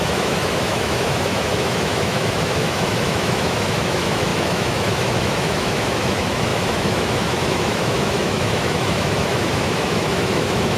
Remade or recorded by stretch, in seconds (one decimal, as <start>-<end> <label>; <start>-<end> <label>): 0.0-10.8 remade

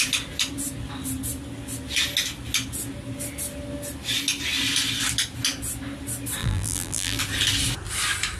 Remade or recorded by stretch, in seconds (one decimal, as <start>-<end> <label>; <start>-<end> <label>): 0.0-6.4 recorded; 6.4-7.2 remade; 7.2-8.4 recorded